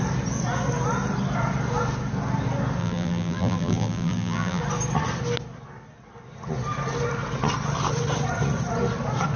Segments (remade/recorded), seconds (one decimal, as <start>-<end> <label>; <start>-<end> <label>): 0.0-2.8 recorded; 2.8-4.6 remade; 4.6-9.4 recorded